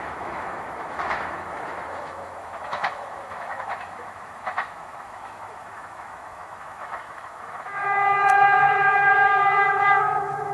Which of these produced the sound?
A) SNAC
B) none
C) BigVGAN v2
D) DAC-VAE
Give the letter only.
D